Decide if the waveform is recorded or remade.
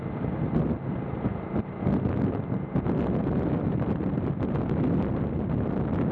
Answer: recorded